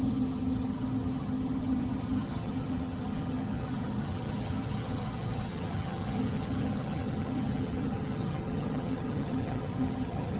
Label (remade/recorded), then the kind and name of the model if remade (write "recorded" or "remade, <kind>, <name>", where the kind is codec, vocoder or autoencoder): remade, vocoder, HiFi-GAN